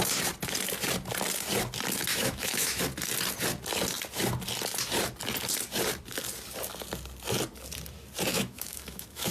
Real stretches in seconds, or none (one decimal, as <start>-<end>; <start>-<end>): 0.0-2.1; 2.8-8.3